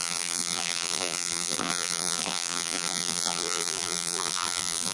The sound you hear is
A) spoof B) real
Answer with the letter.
A